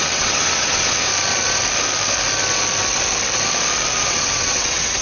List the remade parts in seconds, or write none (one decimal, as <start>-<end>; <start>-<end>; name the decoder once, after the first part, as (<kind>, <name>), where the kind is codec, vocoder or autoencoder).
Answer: 0.0-1.1 (vocoder, WaveNeXt); 4.1-5.0